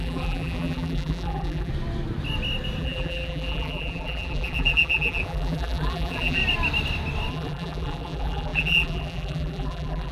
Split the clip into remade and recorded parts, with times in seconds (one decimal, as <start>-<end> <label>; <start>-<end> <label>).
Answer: 0.0-1.7 remade; 1.7-2.8 recorded; 2.8-6.4 remade; 6.4-7.3 recorded; 7.3-10.1 remade